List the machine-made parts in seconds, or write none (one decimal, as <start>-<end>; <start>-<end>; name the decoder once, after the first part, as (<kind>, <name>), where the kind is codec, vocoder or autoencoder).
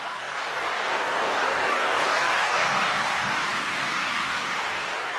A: 0.0-5.2 (codec, DAC)